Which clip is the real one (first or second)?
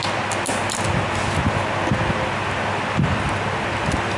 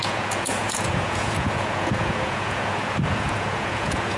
first